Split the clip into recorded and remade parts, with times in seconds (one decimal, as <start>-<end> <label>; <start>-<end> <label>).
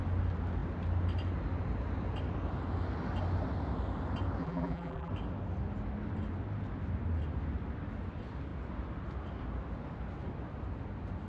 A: 0.0-4.4 recorded; 4.4-5.1 remade; 5.1-11.3 recorded